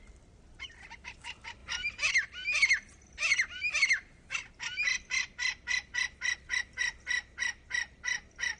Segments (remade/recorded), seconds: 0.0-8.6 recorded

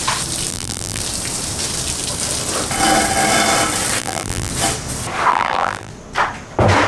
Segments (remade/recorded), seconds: 0.0-0.5 recorded; 0.5-1.0 remade; 1.0-4.0 recorded; 4.0-4.5 remade; 4.5-5.3 recorded; 5.3-5.9 remade; 5.9-6.9 recorded

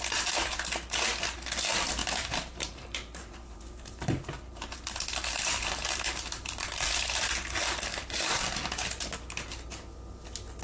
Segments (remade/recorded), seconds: 0.0-2.0 recorded; 2.0-6.9 remade; 6.9-7.9 recorded; 7.9-8.4 remade; 8.4-10.6 recorded